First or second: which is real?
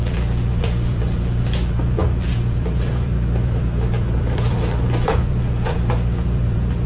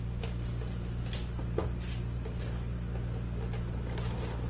second